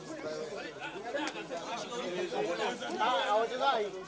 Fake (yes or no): no